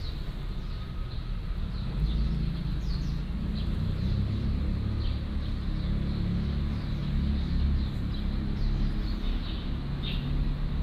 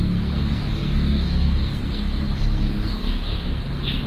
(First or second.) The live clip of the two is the first